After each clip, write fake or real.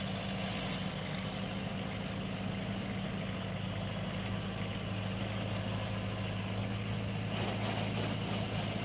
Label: real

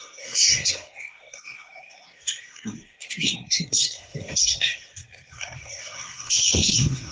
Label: fake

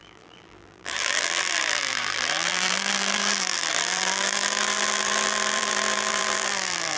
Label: fake